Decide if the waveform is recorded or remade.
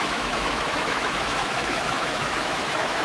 remade